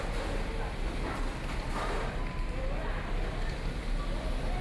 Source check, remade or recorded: recorded